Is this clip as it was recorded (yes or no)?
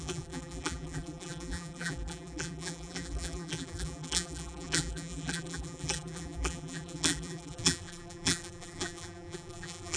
no